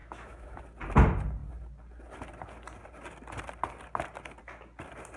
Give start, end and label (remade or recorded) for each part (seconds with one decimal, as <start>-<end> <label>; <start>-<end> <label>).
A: 0.0-0.6 remade; 0.6-5.2 recorded

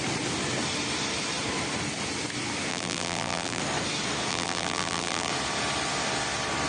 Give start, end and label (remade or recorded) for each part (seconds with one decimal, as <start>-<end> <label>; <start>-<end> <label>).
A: 0.0-2.7 recorded; 2.7-3.6 remade; 3.6-4.3 recorded; 4.3-5.3 remade; 5.3-6.7 recorded

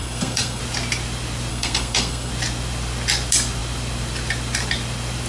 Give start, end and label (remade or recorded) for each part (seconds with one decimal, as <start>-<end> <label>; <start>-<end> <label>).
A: 0.0-0.6 remade; 0.6-1.5 recorded; 1.5-2.3 remade; 2.3-5.3 recorded

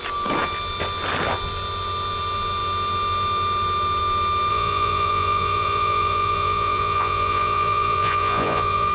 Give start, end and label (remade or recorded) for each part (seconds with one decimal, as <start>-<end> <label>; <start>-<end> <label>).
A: 0.0-4.5 recorded; 4.5-8.9 remade

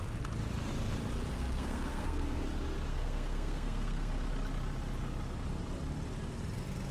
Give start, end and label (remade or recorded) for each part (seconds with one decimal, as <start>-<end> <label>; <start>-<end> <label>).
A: 0.0-1.3 recorded; 1.3-2.4 remade; 2.4-2.9 recorded; 2.9-4.1 remade; 4.1-6.9 recorded

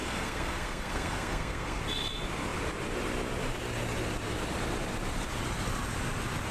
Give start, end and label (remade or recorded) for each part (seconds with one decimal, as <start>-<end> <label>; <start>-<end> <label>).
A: 0.0-1.8 remade; 1.8-6.5 recorded

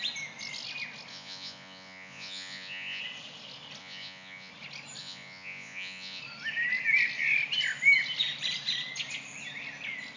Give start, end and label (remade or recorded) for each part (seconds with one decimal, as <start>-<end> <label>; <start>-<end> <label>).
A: 0.0-1.1 recorded; 1.1-3.0 remade; 3.0-3.8 recorded; 3.8-4.5 remade; 4.5-5.0 recorded; 5.0-6.2 remade; 6.2-10.2 recorded

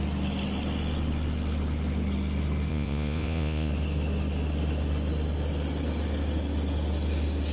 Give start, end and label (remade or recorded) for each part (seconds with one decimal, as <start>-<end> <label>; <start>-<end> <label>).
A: 0.0-2.7 recorded; 2.7-3.7 remade; 3.7-7.5 recorded